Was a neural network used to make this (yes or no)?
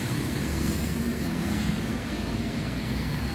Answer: yes